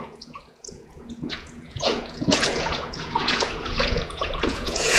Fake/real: fake